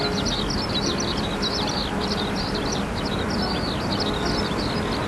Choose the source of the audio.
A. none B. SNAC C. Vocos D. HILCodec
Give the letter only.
A